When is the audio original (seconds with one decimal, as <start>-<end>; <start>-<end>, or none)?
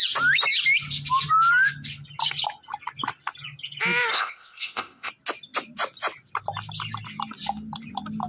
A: 0.0-4.1; 5.1-8.3